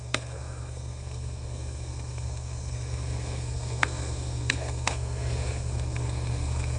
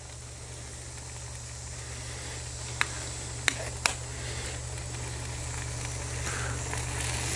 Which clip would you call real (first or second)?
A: second